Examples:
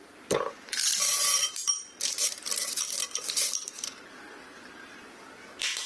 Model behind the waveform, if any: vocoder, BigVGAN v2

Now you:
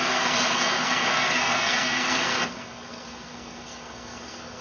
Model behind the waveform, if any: codec, SNAC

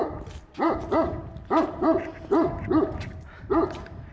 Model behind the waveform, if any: none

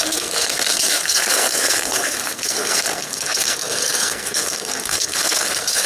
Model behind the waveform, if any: codec, SNAC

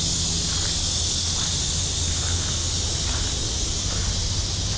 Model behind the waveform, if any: none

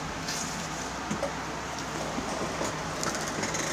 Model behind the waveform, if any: none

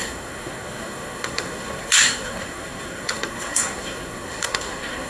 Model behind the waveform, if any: codec, SNAC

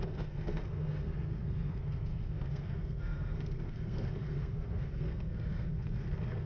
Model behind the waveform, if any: codec, SNAC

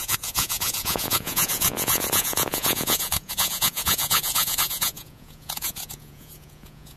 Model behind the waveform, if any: vocoder, Vocos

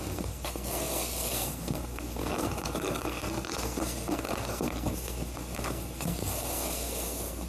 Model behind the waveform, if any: codec, SNAC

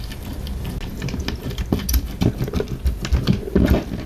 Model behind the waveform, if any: none